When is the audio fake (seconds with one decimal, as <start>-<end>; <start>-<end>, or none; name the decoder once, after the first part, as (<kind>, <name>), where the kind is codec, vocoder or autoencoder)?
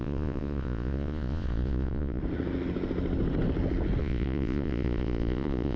0.0-2.2 (vocoder, Vocos); 4.0-5.8